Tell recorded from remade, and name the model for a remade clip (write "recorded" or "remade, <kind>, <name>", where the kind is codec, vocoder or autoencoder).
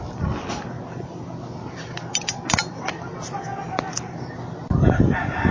recorded